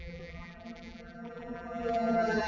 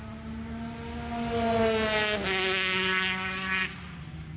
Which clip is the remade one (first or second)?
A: first